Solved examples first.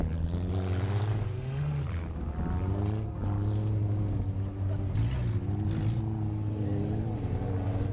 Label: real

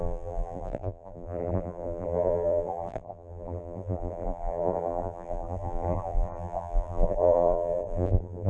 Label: fake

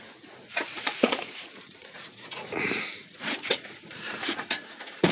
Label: fake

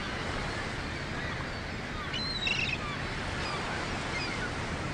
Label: real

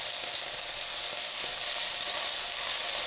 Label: real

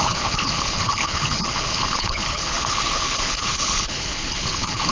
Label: fake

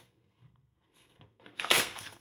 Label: fake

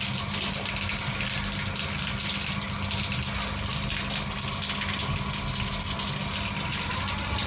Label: real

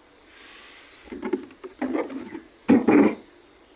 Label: real